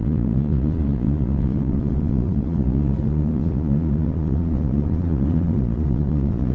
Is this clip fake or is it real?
fake